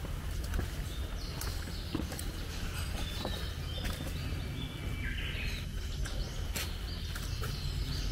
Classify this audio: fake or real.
real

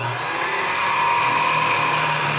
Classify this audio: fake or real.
real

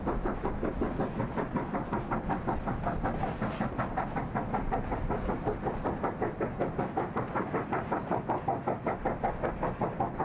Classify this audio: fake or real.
real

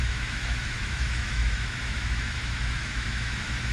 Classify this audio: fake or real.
fake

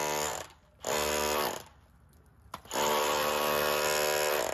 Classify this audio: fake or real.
real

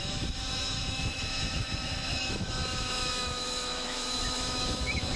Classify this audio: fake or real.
fake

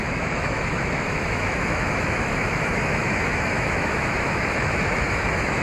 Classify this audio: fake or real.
fake